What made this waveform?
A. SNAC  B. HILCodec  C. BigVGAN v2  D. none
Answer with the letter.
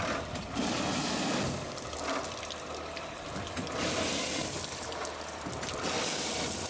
D